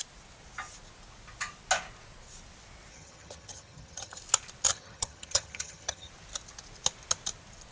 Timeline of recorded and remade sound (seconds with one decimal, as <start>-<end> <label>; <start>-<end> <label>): 0.0-2.9 recorded; 2.9-4.2 remade; 4.2-4.7 recorded; 4.7-6.1 remade; 6.1-7.7 recorded